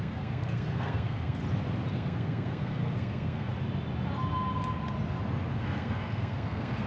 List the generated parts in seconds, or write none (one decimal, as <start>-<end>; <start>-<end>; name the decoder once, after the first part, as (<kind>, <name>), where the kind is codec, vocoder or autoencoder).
0.0-1.4 (codec, SNAC); 1.9-3.5; 5.5-6.9